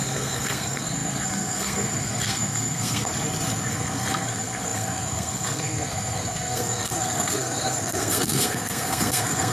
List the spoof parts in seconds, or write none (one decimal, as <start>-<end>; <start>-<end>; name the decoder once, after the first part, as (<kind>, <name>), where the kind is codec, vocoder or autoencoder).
0.0-3.1 (codec, SNAC); 3.7-9.5